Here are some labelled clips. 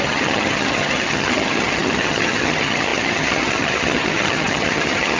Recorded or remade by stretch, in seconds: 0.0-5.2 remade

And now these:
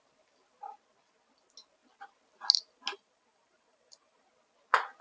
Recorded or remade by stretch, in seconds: 0.0-2.9 recorded; 2.9-4.3 remade; 4.3-5.0 recorded